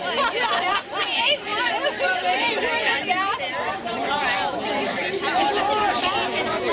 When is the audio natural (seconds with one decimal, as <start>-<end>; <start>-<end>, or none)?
0.0-1.5; 5.5-6.7